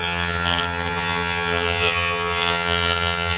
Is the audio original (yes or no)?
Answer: no